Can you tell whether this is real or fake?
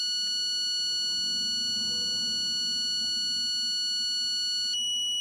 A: real